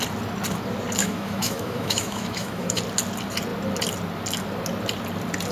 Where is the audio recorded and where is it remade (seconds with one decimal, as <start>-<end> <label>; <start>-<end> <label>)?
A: 0.0-1.0 recorded; 1.0-2.8 remade; 2.8-5.5 recorded